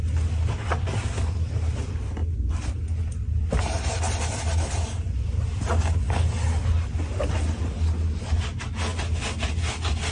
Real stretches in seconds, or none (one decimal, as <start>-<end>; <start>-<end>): 0.0-10.1